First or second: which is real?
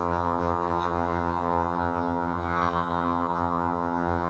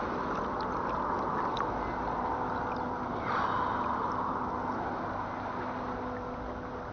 second